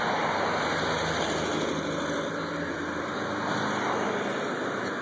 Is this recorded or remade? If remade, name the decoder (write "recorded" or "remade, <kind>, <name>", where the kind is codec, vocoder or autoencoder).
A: recorded